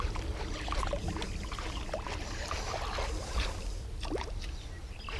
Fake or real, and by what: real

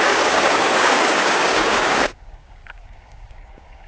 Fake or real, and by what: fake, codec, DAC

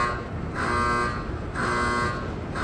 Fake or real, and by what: real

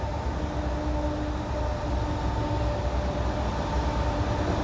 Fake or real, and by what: real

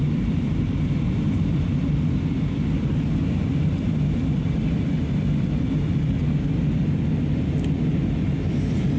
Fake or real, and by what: real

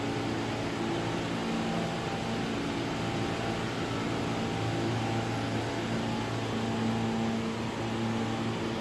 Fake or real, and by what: real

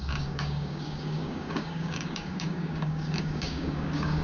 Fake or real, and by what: fake, codec, DAC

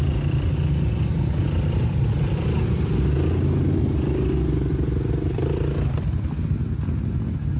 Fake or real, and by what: real